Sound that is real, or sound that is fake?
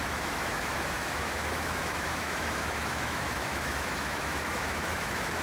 fake